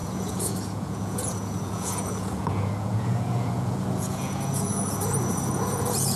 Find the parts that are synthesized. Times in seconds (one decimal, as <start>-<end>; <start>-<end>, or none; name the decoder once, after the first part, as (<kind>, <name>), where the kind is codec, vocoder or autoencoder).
0.0-6.2 (vocoder, Vocos)